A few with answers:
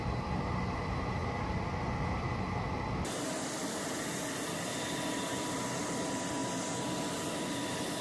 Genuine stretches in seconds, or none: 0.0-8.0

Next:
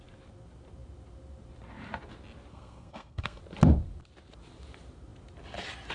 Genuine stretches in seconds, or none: 0.0-2.5; 3.4-5.9

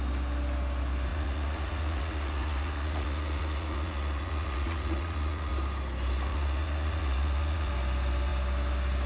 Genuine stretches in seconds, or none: 0.0-1.1; 5.5-6.3; 7.7-9.1

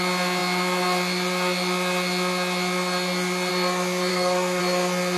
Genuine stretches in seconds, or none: 0.0-4.1; 4.6-5.2